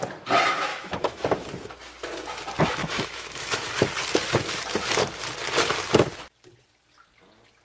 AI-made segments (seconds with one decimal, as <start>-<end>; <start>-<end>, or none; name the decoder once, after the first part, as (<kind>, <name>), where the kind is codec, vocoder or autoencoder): 0.7-1.2 (autoencoder, DAC-VAE); 2.8-3.7